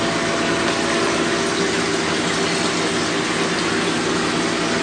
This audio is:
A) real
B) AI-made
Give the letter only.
A